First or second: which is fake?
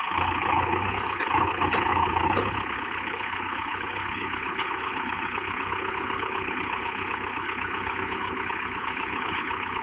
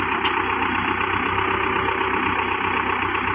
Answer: first